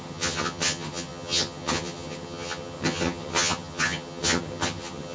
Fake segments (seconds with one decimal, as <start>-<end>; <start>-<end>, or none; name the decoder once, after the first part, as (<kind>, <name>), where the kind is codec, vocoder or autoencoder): 0.0-5.1 (vocoder, HiFi-GAN)